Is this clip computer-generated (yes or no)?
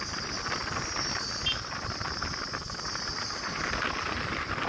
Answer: no